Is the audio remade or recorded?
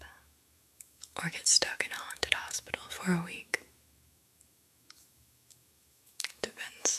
remade